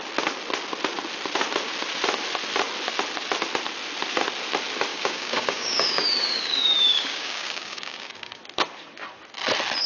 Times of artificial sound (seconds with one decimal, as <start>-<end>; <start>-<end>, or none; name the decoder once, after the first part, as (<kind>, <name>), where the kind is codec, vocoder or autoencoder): 4.9-8.4 (codec, DAC)